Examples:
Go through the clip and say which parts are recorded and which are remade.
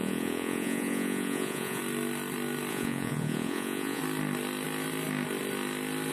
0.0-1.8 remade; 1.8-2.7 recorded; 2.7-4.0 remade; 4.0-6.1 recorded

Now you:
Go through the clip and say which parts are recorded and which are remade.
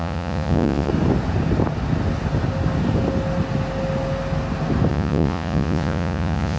0.0-0.9 remade; 0.9-4.9 recorded; 4.9-6.6 remade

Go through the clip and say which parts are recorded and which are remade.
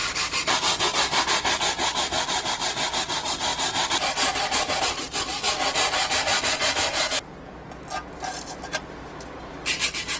0.0-10.2 recorded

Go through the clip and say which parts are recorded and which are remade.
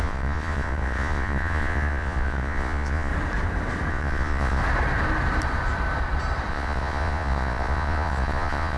0.0-3.1 remade; 3.1-3.9 recorded; 3.9-4.6 remade; 4.6-6.5 recorded; 6.5-8.8 remade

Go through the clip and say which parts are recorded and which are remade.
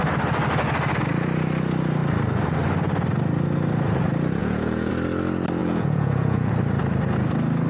0.0-4.4 recorded; 4.4-4.9 remade; 4.9-5.6 recorded; 5.6-6.5 remade; 6.5-7.7 recorded